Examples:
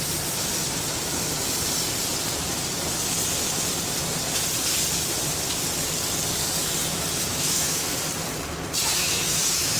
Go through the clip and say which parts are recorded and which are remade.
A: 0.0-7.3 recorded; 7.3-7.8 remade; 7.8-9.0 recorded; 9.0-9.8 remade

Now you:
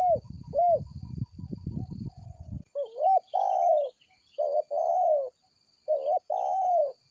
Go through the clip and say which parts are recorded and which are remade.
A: 0.0-7.1 recorded

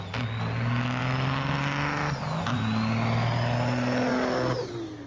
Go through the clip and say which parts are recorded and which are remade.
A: 0.0-5.1 recorded

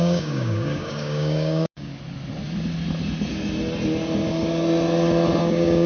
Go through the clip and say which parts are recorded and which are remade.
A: 0.0-1.9 remade; 1.9-5.4 recorded; 5.4-5.9 remade

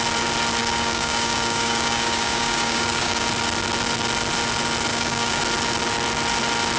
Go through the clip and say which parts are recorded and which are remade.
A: 0.0-0.6 recorded; 0.6-3.3 remade; 3.3-4.9 recorded; 4.9-5.4 remade; 5.4-6.8 recorded